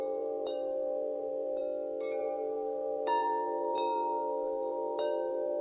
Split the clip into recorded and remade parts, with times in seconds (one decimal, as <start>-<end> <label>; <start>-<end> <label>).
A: 0.0-1.6 remade; 1.6-2.2 recorded; 2.2-5.6 remade